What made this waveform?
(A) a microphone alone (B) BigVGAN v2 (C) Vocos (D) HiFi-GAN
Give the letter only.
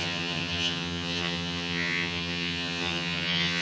D